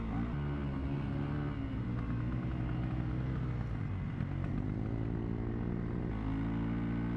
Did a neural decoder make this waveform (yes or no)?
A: no